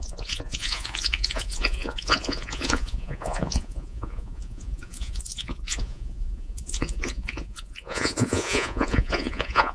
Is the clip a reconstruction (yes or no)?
yes